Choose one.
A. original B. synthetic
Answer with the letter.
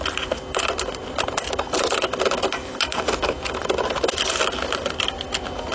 A